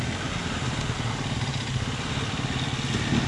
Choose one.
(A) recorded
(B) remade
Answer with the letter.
A